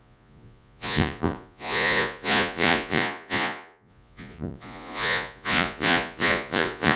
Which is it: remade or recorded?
remade